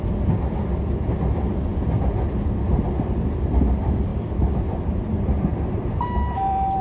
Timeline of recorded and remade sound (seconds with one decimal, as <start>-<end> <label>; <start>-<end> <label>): 0.0-4.1 recorded; 4.1-6.8 remade